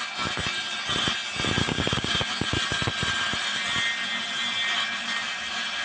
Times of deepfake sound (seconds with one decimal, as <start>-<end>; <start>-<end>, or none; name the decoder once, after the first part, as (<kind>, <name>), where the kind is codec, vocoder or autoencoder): 1.6-2.2 (codec, DAC)